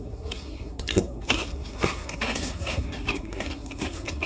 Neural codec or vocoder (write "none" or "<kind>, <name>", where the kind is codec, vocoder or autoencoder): codec, SNAC